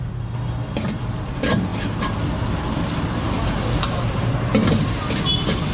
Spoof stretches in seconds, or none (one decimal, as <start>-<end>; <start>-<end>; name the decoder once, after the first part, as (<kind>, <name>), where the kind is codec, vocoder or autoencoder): none